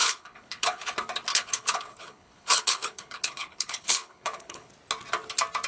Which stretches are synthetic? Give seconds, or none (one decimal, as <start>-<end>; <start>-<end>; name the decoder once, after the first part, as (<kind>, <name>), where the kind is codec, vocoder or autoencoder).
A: 0.0-0.9 (codec, HILCodec); 1.3-4.7